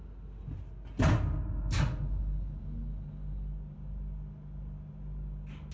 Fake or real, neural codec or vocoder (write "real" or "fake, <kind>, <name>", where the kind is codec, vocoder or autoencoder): real